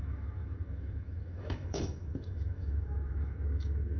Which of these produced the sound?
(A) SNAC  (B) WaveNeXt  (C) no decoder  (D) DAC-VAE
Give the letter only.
D